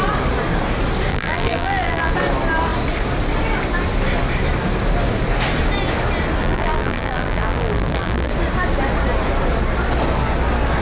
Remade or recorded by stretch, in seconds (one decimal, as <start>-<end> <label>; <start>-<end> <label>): 0.0-1.1 recorded; 1.1-2.1 remade; 2.1-6.4 recorded; 6.4-8.3 remade; 8.3-10.8 recorded